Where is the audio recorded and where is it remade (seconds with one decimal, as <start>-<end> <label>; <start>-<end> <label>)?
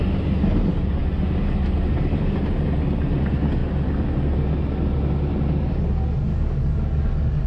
0.0-6.3 recorded; 6.3-7.5 remade